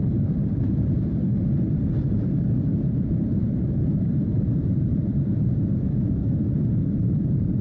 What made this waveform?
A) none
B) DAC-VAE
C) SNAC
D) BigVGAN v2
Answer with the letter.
D